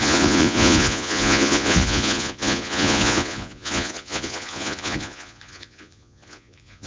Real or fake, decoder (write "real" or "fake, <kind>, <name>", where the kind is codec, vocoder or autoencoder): fake, vocoder, Vocos